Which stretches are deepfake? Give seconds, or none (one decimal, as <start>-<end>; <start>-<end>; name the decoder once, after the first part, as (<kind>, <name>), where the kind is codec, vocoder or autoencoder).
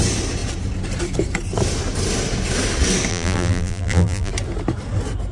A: 3.1-4.3 (vocoder, BigVGAN v2)